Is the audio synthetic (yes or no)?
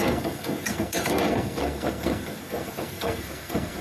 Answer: yes